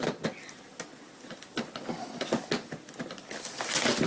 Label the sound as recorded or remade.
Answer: recorded